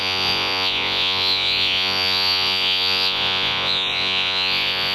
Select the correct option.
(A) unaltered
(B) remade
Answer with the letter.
B